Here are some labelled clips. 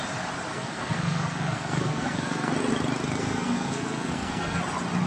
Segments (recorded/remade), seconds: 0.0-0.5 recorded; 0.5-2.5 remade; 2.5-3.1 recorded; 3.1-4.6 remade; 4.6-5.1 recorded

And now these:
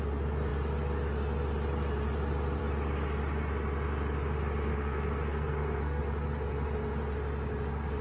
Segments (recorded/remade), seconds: 0.0-4.7 recorded; 4.7-6.0 remade; 6.0-8.0 recorded